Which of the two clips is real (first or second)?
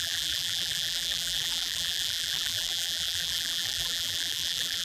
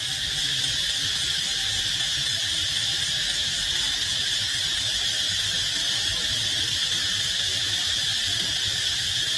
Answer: second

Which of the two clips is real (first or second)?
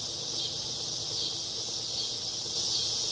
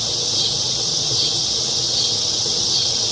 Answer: first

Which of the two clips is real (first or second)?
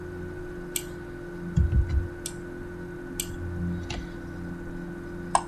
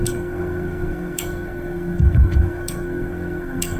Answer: first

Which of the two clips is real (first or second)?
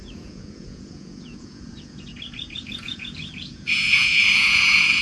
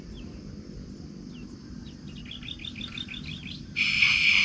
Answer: second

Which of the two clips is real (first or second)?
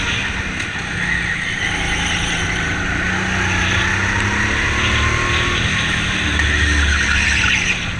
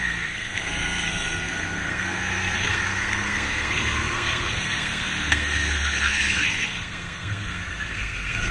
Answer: first